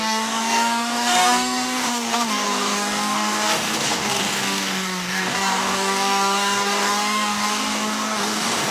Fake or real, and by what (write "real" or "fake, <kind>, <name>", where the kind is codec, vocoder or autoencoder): fake, codec, DAC